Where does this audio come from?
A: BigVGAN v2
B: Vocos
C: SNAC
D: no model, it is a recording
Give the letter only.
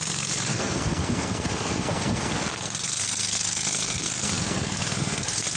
C